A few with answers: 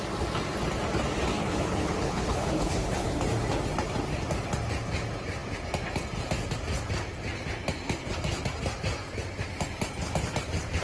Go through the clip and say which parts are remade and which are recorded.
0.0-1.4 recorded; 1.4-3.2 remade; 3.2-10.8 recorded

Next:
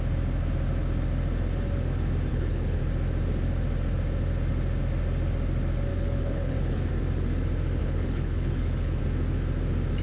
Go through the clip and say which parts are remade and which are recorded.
0.0-2.3 recorded; 2.3-2.8 remade; 2.8-5.9 recorded; 5.9-6.9 remade; 6.9-7.8 recorded; 7.8-9.0 remade; 9.0-10.0 recorded

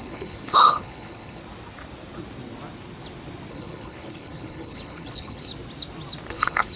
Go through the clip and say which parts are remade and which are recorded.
0.0-1.4 remade; 1.4-3.5 recorded; 3.5-5.5 remade; 5.5-6.3 recorded; 6.3-6.8 remade